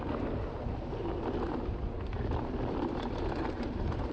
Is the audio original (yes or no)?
yes